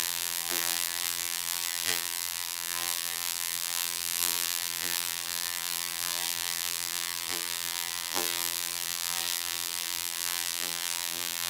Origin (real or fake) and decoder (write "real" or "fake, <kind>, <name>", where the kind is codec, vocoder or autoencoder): fake, vocoder, BigVGAN v2